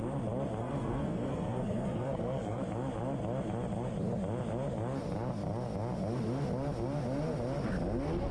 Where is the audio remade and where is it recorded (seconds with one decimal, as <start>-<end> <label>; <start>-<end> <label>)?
0.0-0.6 recorded; 0.6-2.6 remade; 2.6-8.3 recorded